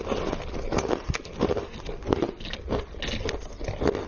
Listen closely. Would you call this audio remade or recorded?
recorded